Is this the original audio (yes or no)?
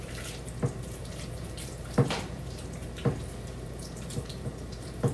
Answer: no